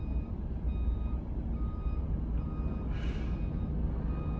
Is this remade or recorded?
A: recorded